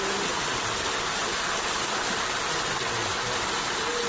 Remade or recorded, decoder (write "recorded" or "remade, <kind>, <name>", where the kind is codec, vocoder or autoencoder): recorded